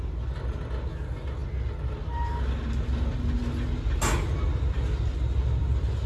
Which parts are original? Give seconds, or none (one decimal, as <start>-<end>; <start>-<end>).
0.0-6.1